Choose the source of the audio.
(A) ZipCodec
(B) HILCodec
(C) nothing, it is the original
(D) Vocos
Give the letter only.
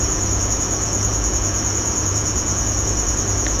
D